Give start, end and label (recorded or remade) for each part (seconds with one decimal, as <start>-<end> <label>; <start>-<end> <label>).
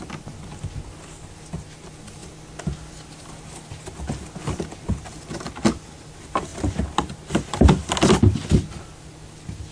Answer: 0.0-9.7 recorded